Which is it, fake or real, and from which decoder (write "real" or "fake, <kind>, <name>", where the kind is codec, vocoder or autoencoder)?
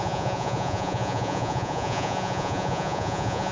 fake, vocoder, Vocos